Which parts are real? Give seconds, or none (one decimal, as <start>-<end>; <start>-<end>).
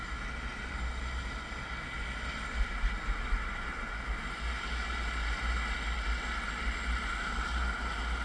0.0-8.2